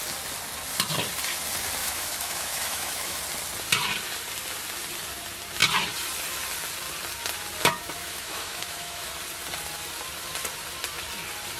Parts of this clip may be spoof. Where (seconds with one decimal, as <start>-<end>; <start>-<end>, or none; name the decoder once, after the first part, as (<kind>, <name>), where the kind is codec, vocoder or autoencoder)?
1.8-3.2 (autoencoder, DAC-VAE); 8.0-9.1

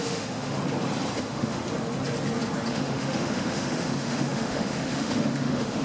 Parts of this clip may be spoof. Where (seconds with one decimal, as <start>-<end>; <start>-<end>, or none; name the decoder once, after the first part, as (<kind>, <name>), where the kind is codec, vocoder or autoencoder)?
0.0-0.6 (autoencoder, DAC-VAE); 1.2-1.6; 2.7-5.8

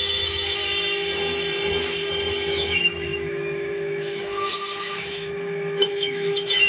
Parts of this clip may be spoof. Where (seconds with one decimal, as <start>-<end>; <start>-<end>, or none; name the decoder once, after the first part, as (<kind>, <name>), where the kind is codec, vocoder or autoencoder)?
0.0-0.6 (autoencoder, DAC-VAE); 2.5-6.7

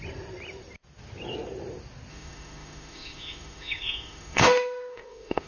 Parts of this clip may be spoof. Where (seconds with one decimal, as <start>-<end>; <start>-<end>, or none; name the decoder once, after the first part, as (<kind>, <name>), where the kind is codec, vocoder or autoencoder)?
2.1-5.5 (autoencoder, DAC-VAE)

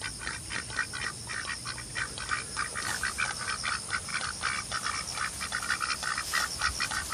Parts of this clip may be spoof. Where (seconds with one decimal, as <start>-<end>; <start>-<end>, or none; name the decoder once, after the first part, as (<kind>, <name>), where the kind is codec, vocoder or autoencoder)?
none

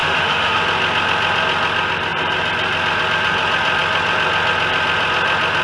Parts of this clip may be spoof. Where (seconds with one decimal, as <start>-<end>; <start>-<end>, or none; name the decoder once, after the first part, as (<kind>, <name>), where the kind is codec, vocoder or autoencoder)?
0.0-0.6 (autoencoder, DAC-VAE)

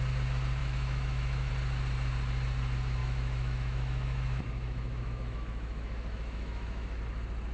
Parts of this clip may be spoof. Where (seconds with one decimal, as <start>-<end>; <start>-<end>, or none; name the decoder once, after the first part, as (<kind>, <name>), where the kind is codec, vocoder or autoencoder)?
0.6-1.5 (autoencoder, DAC-VAE); 3.0-7.0